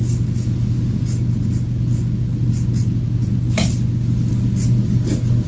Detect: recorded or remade recorded